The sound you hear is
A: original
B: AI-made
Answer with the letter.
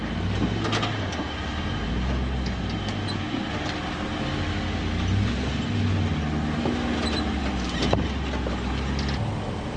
A